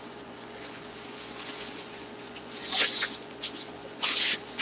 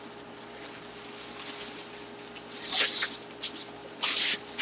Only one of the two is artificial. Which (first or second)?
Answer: first